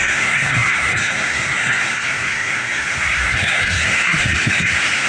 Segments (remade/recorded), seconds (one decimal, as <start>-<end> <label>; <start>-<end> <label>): 0.0-5.1 remade